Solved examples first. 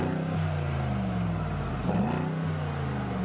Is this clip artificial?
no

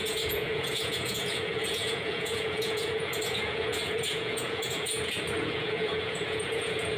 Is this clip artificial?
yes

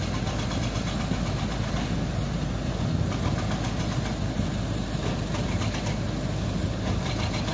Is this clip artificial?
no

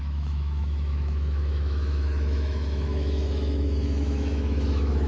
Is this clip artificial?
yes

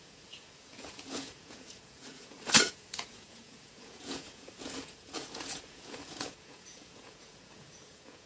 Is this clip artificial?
yes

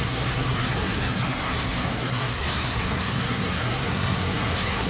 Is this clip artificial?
yes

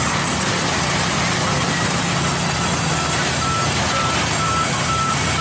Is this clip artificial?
no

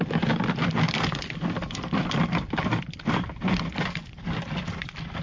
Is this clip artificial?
no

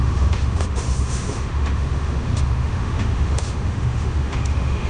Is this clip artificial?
yes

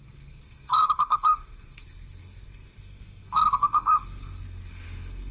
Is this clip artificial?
yes